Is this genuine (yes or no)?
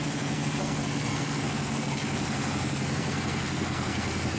no